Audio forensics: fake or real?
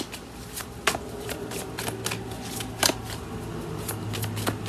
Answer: real